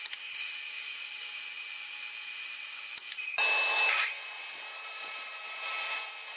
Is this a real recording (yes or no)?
yes